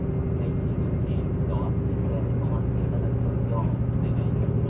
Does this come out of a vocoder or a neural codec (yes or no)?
no